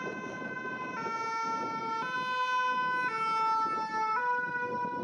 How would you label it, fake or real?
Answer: real